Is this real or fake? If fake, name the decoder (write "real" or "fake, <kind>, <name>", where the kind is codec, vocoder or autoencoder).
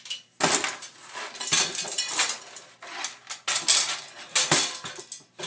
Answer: real